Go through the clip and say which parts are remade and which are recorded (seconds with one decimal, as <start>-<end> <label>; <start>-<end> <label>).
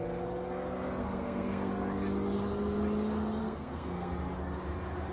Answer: 0.0-1.0 recorded; 1.0-1.7 remade; 1.7-3.4 recorded; 3.4-4.1 remade; 4.1-5.1 recorded